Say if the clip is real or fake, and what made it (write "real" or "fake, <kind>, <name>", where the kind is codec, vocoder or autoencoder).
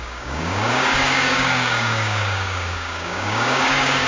fake, codec, DAC